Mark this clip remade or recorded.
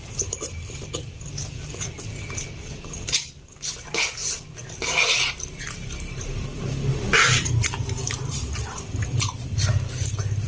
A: remade